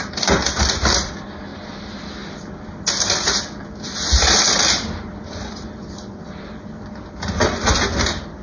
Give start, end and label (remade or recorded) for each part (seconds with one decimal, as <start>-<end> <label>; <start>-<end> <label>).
0.0-8.4 recorded